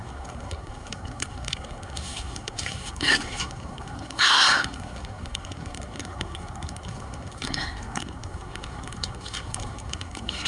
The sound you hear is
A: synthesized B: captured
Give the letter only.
A